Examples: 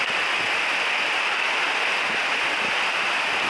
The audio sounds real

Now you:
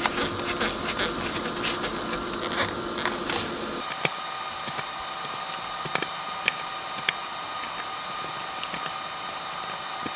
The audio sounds real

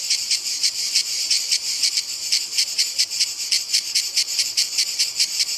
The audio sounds fake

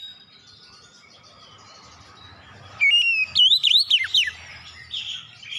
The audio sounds fake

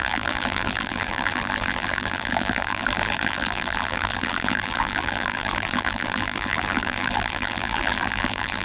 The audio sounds fake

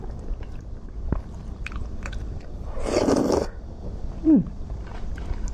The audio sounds fake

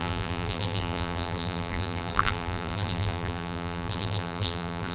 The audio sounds fake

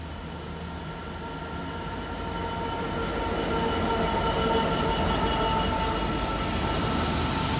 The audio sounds real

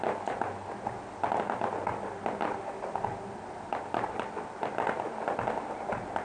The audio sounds real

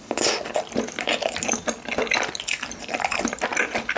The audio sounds fake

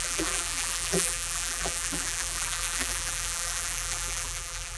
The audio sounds fake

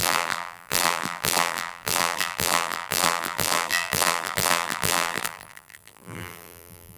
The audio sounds fake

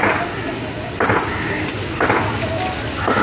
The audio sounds real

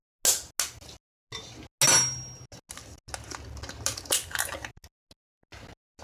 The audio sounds real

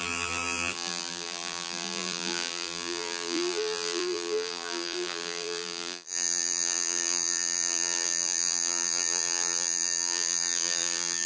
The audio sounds fake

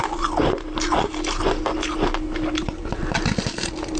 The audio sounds real